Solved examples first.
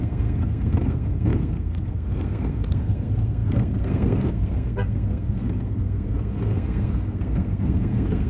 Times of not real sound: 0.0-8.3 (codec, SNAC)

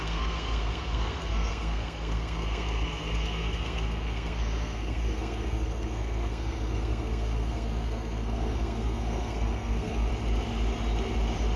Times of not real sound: 0.0-10.1 (codec, SNAC)